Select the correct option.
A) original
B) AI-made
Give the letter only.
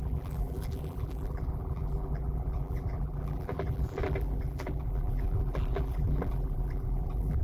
B